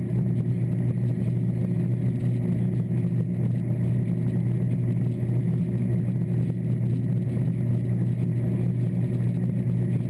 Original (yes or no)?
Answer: yes